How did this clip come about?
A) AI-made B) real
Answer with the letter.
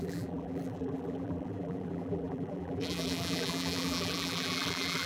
A